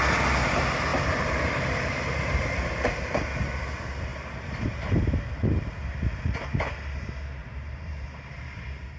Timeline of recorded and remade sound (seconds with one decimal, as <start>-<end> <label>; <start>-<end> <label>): 0.0-0.9 recorded; 0.9-3.4 remade; 3.4-4.1 recorded; 4.1-5.7 remade; 5.7-7.4 recorded; 7.4-8.3 remade; 8.3-9.0 recorded